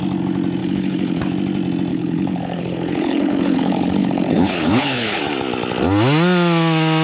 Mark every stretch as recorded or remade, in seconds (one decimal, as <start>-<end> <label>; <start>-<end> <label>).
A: 0.0-0.6 recorded; 0.6-1.2 remade; 1.2-1.9 recorded; 1.9-5.2 remade; 5.2-7.0 recorded